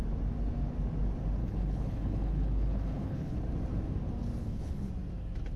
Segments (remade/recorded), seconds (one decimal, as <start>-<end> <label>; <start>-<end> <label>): 0.0-1.4 recorded; 1.4-3.4 remade; 3.4-4.4 recorded; 4.4-4.9 remade; 4.9-5.6 recorded